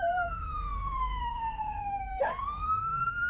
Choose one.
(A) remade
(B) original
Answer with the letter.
A